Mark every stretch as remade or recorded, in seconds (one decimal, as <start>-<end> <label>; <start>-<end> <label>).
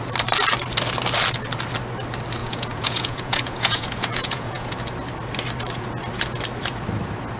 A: 0.0-2.4 recorded; 2.4-4.7 remade; 4.7-7.4 recorded